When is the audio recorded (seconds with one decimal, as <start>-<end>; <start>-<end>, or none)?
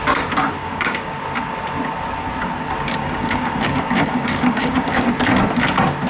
0.0-0.6; 1.2-3.0; 5.1-6.1